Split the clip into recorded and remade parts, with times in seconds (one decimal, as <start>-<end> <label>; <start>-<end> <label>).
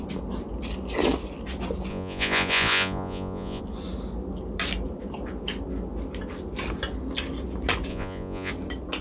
0.0-1.9 recorded; 1.9-3.6 remade; 3.6-7.9 recorded; 7.9-8.5 remade; 8.5-9.0 recorded